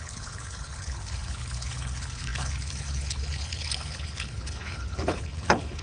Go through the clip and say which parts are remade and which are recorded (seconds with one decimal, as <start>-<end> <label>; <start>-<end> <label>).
0.0-5.8 remade